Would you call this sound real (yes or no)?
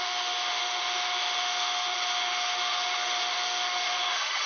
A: no